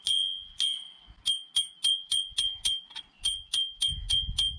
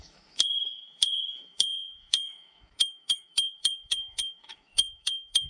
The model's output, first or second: second